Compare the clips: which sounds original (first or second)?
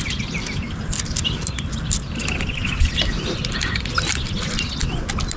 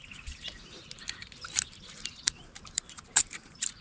first